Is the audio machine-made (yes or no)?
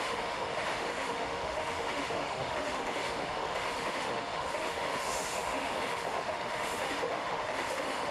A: yes